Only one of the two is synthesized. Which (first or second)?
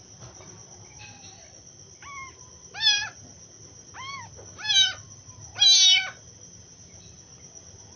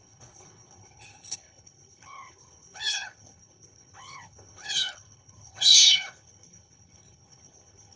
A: second